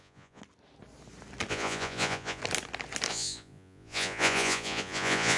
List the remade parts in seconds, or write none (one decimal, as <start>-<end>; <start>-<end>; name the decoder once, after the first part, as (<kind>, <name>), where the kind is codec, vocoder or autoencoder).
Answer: 0.0-0.4 (vocoder, Vocos); 1.5-2.4; 3.1-5.4